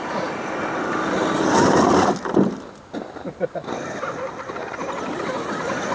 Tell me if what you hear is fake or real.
real